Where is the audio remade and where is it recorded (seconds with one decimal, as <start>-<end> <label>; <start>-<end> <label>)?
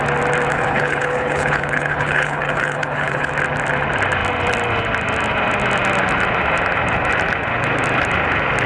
0.0-0.5 recorded; 0.5-3.3 remade; 3.3-8.7 recorded